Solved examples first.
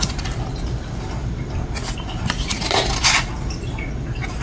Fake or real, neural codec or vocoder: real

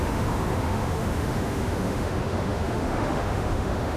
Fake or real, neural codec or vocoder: fake, autoencoder, DAC-VAE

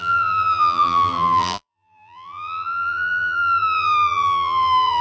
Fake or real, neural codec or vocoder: fake, vocoder, BigVGAN v2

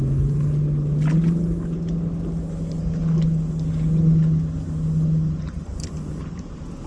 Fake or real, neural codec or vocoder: real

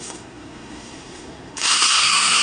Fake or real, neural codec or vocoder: fake, codec, SNAC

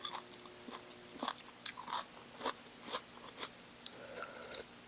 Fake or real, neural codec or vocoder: real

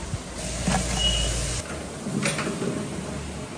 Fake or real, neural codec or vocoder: real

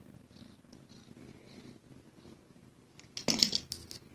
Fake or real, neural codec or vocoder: real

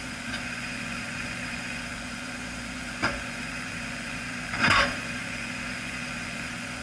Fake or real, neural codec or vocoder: fake, vocoder, Vocos